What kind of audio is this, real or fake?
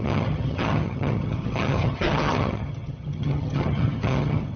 fake